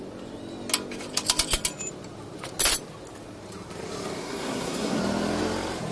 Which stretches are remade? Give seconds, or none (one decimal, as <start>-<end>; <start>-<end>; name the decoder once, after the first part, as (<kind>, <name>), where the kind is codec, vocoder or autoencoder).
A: 4.2-5.0 (codec, SNAC)